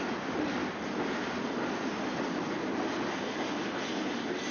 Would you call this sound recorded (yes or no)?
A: yes